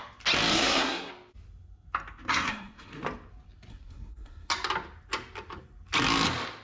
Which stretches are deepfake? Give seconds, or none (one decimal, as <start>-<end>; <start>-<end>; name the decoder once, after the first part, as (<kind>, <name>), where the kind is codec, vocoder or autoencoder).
0.5-1.1 (codec, SNAC); 2.3-3.0; 3.7-4.5